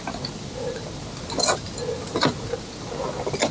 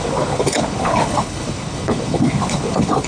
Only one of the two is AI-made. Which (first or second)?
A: second